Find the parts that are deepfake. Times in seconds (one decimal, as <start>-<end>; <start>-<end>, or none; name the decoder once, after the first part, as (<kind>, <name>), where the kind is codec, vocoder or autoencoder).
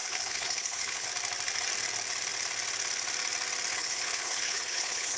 0.0-1.1 (codec, HILCodec); 3.7-5.2